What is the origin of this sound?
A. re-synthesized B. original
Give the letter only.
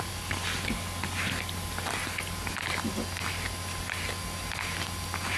B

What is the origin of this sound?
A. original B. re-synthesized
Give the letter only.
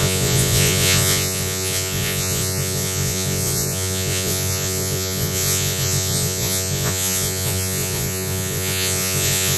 B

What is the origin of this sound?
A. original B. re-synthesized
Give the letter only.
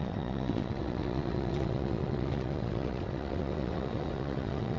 B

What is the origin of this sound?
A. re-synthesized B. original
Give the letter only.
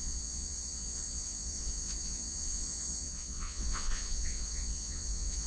A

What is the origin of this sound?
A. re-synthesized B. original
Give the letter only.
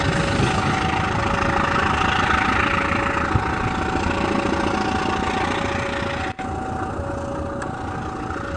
B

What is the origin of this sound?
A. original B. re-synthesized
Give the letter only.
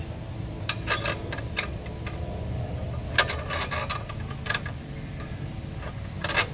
A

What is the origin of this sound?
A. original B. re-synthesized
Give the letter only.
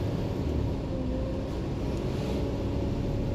A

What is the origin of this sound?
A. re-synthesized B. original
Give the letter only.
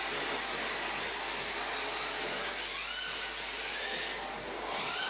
B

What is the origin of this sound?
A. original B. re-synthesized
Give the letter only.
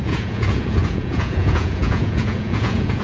B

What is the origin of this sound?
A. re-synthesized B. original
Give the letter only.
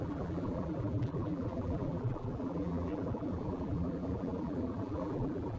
A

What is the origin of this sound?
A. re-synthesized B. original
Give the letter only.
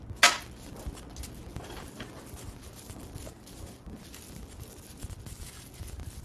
B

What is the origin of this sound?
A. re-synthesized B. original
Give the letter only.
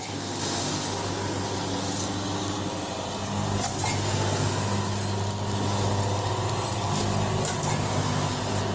B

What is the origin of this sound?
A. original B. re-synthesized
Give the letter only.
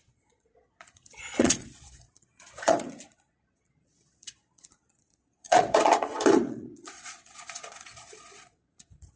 B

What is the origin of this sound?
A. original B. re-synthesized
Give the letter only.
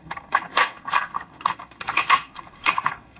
B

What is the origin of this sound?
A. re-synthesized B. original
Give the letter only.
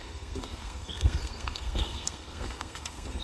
A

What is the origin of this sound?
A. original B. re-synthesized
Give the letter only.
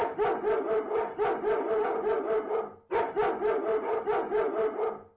A